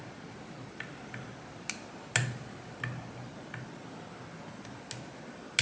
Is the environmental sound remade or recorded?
recorded